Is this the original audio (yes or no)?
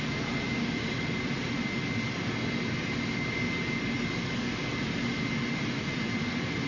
yes